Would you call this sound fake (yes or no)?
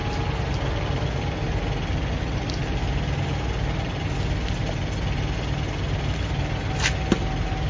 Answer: no